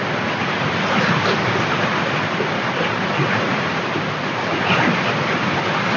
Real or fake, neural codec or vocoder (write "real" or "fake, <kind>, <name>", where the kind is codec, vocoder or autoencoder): real